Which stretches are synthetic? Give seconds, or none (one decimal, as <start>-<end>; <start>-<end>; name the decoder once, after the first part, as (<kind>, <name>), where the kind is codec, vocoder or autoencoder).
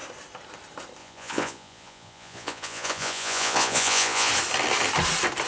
1.0-4.3 (vocoder, Vocos)